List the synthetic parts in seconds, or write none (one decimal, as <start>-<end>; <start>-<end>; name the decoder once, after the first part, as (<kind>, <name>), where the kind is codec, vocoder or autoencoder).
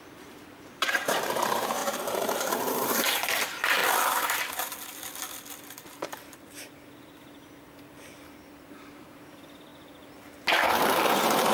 0.0-3.8 (vocoder, BigVGAN v2); 8.9-9.7; 10.8-11.5